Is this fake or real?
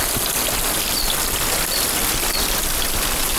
real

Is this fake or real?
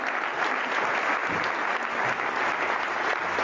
real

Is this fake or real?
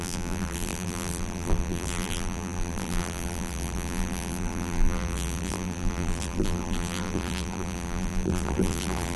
fake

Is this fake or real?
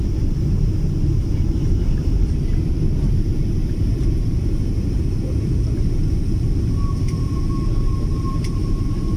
fake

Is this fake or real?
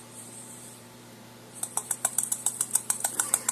fake